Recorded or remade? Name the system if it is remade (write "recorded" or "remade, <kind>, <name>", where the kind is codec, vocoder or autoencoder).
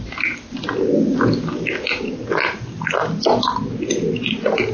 recorded